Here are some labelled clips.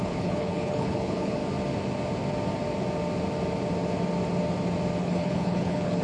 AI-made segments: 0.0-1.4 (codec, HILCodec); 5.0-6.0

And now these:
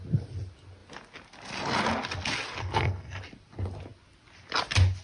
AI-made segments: 2.6-3.2 (codec, SNAC)

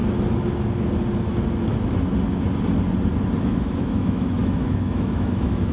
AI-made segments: 3.4-5.7 (autoencoder, DAC-VAE)

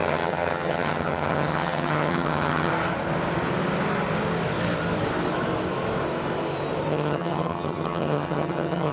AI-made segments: 0.0-2.7 (vocoder, HiFi-GAN); 6.9-8.9